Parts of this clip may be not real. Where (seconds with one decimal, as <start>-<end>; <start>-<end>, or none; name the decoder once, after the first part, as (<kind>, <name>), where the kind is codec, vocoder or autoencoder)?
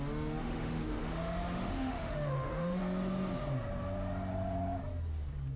0.4-2.8 (autoencoder, DAC-VAE)